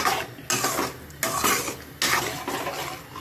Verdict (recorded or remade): recorded